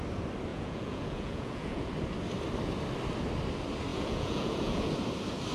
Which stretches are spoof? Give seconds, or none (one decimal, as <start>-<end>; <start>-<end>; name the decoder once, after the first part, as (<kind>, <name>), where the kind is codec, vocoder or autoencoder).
0.5-1.9 (vocoder, Vocos); 3.9-4.9